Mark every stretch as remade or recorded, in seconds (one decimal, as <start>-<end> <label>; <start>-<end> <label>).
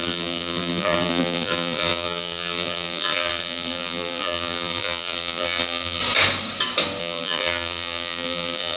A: 0.0-6.0 remade; 6.0-7.0 recorded; 7.0-8.8 remade